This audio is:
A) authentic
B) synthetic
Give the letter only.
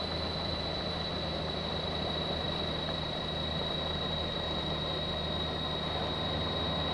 A